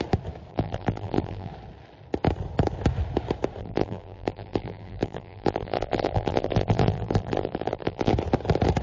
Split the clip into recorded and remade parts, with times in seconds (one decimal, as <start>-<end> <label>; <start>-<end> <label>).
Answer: 0.0-0.5 recorded; 0.5-1.5 remade; 1.5-3.6 recorded; 3.6-8.1 remade; 8.1-8.8 recorded